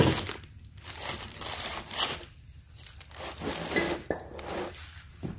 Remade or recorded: recorded